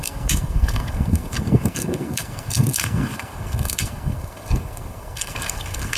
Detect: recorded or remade remade